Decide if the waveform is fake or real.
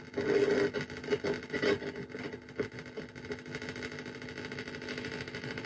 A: real